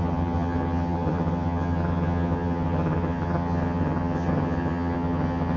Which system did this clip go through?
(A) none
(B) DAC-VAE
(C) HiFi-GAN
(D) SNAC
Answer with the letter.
C